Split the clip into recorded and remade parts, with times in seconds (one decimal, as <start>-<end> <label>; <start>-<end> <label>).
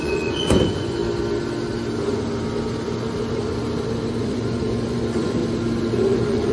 0.0-1.0 remade; 1.0-4.2 recorded; 4.2-5.4 remade; 5.4-5.9 recorded; 5.9-6.5 remade